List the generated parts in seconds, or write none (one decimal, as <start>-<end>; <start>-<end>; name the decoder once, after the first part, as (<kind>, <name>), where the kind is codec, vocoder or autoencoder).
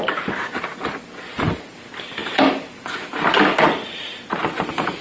none